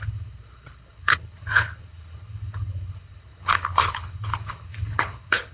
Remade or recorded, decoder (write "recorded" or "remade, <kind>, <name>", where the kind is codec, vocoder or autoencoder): remade, codec, HILCodec